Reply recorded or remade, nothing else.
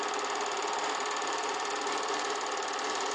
remade